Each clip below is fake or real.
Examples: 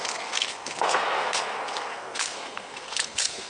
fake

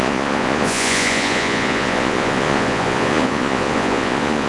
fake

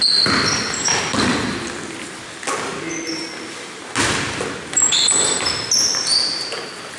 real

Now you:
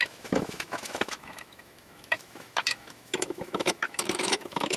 fake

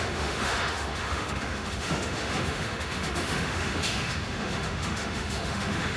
fake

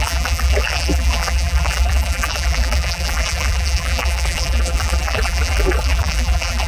fake